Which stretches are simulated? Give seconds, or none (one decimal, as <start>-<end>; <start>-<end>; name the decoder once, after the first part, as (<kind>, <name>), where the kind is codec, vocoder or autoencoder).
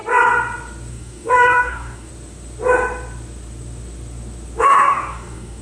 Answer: 0.9-2.1 (codec, DAC); 4.6-5.6